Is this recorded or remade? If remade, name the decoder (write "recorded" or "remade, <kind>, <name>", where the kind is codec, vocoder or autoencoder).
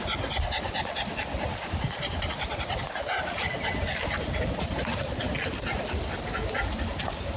recorded